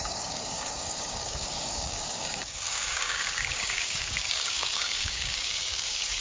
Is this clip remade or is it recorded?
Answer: remade